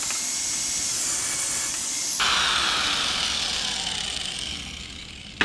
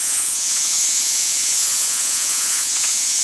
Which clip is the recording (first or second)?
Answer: first